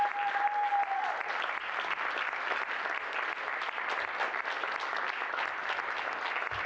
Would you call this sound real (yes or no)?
yes